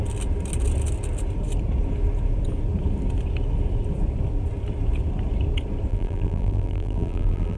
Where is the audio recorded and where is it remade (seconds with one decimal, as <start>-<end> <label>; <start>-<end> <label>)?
0.0-5.9 recorded; 5.9-7.6 remade